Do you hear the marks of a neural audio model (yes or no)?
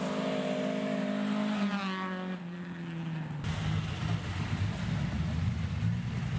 no